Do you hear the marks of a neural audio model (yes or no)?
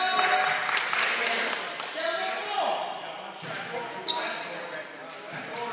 no